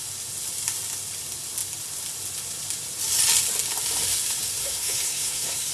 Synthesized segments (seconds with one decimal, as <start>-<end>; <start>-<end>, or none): 4.6-5.7